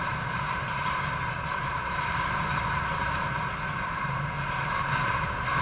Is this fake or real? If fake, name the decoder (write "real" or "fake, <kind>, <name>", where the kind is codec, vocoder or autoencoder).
fake, vocoder, BigVGAN v2